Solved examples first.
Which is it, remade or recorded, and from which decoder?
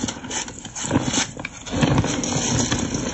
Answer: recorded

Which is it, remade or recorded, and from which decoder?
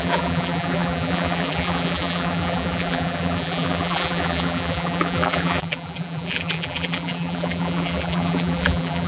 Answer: remade, vocoder, BigVGAN v2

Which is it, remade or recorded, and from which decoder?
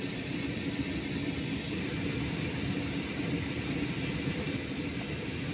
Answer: recorded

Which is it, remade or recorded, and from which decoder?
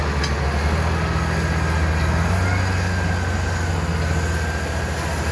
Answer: recorded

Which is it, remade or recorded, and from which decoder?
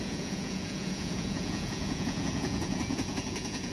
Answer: remade, vocoder, Vocos